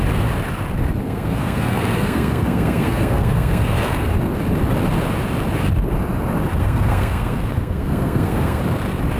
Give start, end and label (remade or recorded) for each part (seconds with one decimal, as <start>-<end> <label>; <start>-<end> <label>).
0.0-1.0 recorded; 1.0-4.1 remade; 4.1-6.6 recorded; 6.6-8.6 remade; 8.6-9.2 recorded